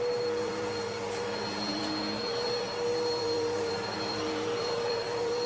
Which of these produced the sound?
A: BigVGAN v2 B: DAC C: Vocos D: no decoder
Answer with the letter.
A